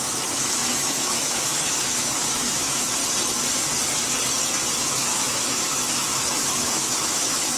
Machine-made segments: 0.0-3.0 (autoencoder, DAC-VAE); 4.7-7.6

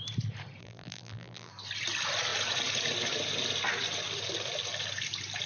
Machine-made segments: 0.6-1.5 (vocoder, BigVGAN v2)